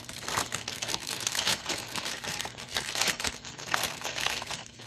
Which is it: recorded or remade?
remade